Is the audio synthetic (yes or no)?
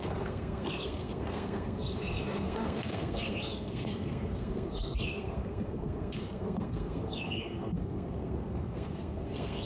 yes